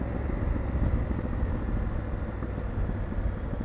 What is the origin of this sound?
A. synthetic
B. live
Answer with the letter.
B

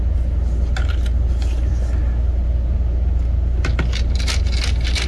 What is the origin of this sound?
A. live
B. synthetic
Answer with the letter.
A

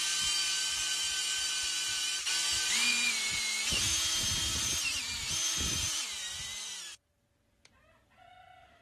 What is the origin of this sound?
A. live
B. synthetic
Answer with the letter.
B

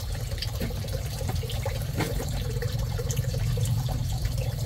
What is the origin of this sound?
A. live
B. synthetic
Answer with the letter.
B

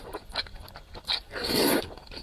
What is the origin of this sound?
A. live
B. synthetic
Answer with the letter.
A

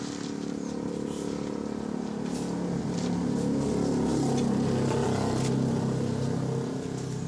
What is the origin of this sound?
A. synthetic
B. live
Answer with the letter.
B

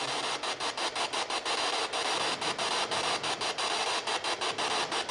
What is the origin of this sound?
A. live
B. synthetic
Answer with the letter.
A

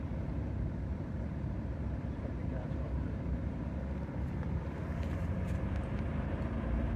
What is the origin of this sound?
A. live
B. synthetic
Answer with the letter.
B